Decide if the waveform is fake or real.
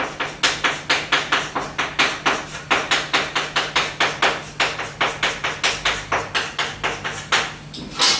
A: real